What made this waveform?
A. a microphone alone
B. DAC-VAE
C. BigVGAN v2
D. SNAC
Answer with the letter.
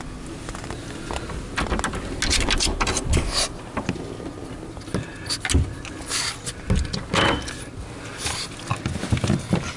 A